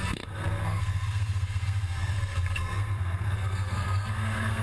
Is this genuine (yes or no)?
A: no